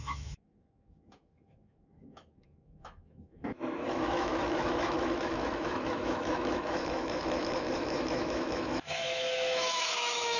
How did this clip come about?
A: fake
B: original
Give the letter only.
A